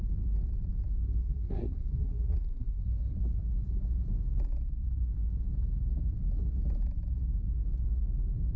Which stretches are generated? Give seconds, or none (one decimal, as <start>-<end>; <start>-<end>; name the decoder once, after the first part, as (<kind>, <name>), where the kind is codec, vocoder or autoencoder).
1.2-2.8 (codec, SNAC)